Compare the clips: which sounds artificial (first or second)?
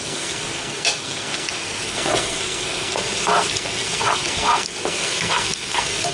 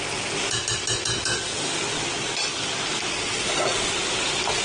first